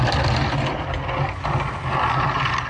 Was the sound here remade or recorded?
recorded